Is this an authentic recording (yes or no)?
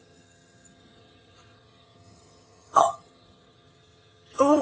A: no